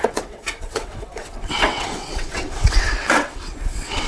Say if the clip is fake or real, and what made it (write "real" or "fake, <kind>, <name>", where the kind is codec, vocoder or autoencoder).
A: fake, vocoder, WaveNeXt